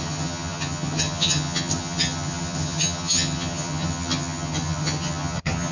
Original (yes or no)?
no